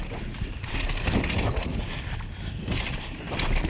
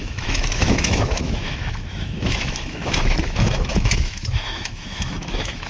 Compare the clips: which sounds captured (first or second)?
first